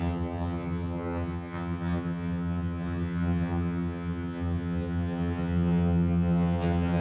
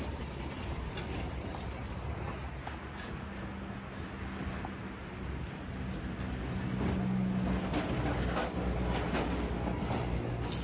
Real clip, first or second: second